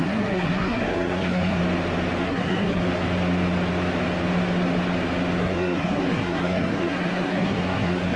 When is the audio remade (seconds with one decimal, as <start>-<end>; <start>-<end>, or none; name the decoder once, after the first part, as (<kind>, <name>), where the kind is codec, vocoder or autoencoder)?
0.0-1.6 (codec, SNAC); 2.2-2.8; 5.4-8.2